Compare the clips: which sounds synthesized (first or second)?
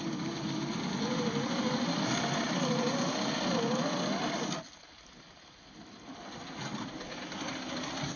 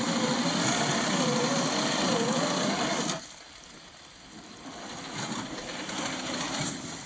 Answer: second